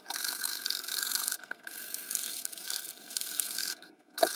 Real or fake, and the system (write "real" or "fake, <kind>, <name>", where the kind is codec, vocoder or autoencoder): fake, codec, SNAC